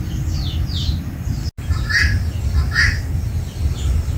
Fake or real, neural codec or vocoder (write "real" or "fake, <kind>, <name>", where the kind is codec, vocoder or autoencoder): real